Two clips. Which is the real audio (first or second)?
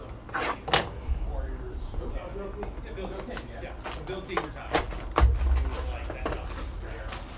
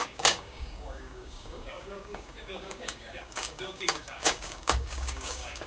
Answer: first